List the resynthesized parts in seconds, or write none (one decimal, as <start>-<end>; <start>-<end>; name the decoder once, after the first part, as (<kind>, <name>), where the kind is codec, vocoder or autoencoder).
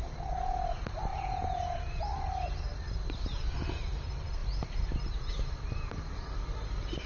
1.1-2.0 (vocoder, Vocos)